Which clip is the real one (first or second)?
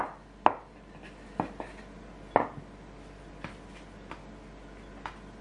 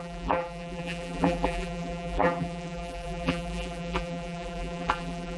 first